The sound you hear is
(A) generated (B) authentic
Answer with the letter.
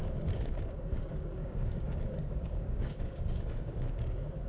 A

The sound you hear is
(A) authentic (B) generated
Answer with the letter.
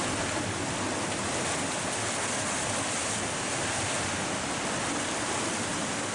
A